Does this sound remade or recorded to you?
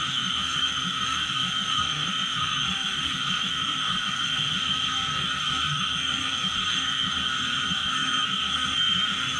remade